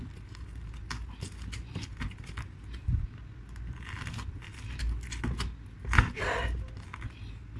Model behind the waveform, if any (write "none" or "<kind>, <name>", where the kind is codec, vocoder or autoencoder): none